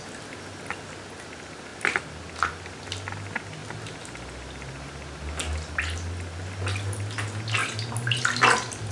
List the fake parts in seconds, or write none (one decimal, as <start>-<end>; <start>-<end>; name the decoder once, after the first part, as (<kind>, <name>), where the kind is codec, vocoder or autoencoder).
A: none